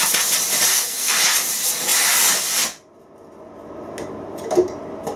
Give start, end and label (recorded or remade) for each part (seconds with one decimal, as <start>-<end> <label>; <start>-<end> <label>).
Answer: 0.0-0.7 recorded; 0.7-1.2 remade; 1.2-5.2 recorded

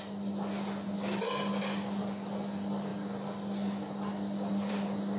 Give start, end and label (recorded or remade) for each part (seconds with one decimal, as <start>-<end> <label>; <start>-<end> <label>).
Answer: 0.0-5.2 recorded